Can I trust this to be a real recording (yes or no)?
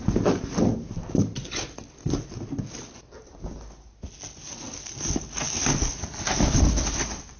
yes